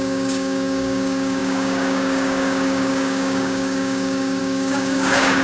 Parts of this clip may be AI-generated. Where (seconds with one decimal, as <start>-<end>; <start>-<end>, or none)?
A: 0.0-5.4

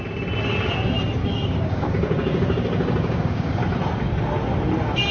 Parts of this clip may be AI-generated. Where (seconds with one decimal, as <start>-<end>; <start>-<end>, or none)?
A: 1.2-3.6

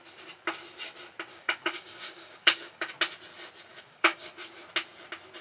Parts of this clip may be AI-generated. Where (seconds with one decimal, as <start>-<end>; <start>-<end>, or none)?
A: 1.3-2.9; 3.7-4.3

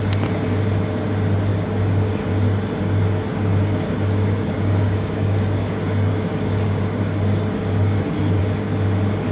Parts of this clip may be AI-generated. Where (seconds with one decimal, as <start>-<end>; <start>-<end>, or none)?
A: 1.5-2.1; 3.3-8.4

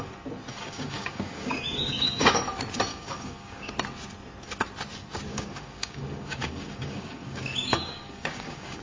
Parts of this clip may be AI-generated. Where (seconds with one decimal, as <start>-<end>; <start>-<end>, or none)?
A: 0.5-2.4; 2.9-3.7; 5.3-8.8

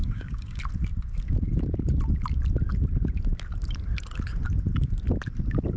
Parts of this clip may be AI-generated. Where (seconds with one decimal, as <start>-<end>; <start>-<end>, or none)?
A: 0.0-0.6

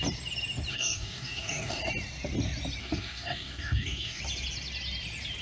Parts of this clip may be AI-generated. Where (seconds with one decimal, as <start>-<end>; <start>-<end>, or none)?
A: 0.7-1.8; 2.8-4.2

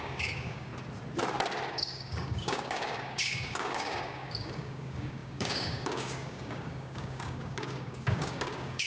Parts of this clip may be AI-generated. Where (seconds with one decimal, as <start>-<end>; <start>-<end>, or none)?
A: 0.0-0.7; 1.7-8.9